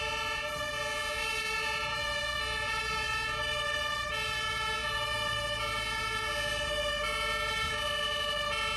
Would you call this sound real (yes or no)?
yes